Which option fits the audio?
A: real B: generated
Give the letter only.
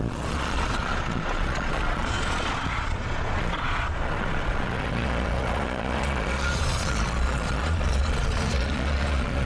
B